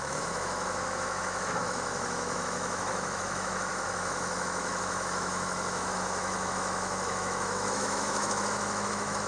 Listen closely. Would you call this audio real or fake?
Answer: fake